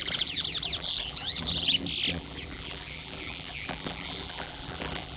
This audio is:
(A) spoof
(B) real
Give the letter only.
A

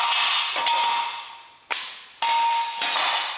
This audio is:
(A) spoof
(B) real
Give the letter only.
B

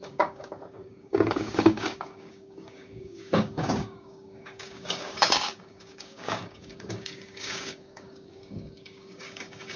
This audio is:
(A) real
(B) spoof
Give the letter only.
B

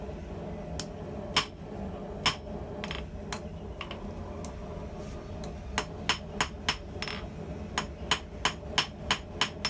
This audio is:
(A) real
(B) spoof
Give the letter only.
A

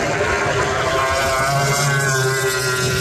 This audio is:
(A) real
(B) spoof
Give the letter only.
A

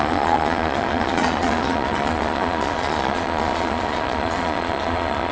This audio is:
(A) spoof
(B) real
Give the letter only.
A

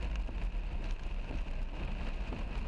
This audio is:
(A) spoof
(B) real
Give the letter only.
B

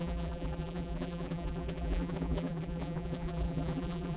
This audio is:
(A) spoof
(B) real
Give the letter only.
A